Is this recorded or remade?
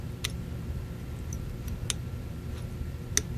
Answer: recorded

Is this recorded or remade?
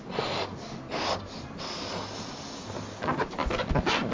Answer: recorded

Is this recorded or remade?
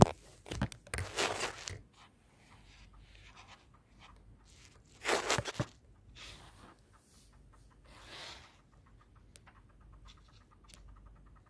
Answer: recorded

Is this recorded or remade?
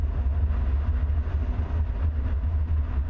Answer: recorded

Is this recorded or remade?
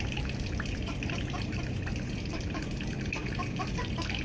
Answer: remade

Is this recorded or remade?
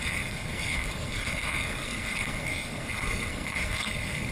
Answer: remade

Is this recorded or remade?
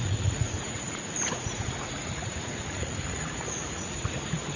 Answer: remade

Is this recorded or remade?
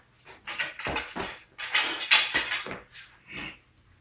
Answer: recorded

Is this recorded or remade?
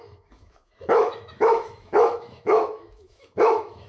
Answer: remade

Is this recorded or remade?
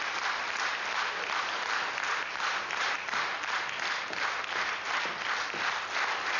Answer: recorded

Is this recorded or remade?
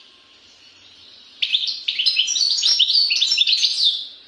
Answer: remade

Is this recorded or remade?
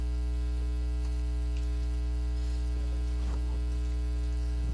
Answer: recorded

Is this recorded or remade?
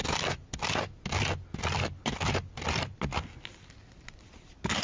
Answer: recorded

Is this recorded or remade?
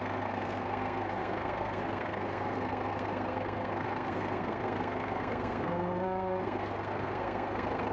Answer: remade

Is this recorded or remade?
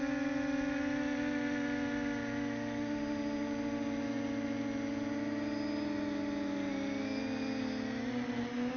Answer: recorded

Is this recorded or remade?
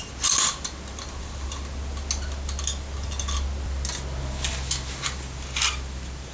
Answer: recorded